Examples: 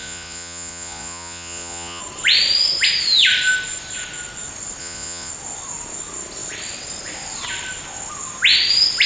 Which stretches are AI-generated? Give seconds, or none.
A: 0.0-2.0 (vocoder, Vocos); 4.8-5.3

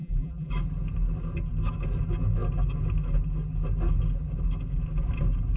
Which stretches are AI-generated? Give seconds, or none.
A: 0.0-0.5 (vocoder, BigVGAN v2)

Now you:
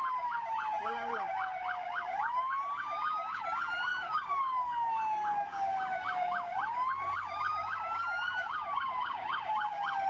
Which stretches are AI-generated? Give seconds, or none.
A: 0.0-10.1 (codec, DAC)

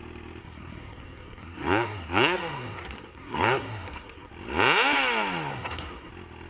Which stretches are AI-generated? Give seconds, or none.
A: 0.4-4.3 (codec, SNAC); 5.5-6.1